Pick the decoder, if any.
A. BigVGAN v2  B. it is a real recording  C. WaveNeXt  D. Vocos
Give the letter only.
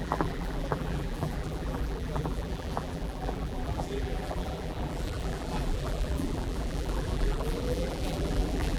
A